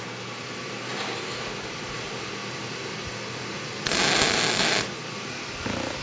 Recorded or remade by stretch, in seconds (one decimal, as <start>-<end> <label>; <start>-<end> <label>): 0.0-2.4 recorded; 2.4-4.7 remade; 4.7-6.0 recorded